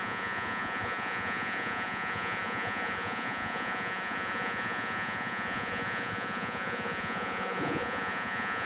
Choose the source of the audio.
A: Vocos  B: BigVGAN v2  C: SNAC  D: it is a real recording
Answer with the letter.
A